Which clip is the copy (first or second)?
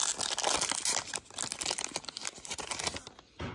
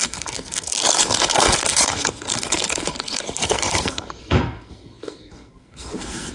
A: second